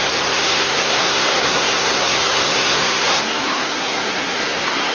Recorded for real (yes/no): no